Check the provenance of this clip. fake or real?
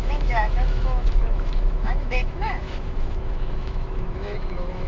fake